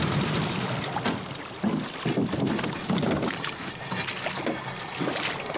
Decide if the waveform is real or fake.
real